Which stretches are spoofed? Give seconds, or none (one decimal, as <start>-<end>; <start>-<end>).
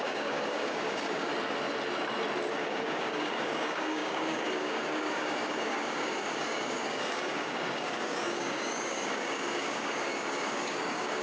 0.0-1.3; 2.5-11.2